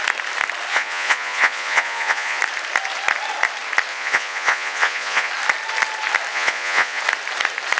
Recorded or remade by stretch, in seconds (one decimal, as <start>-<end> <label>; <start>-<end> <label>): 0.0-0.7 recorded; 0.7-2.4 remade; 2.4-3.9 recorded; 3.9-5.3 remade; 5.3-6.3 recorded; 6.3-7.0 remade; 7.0-7.8 recorded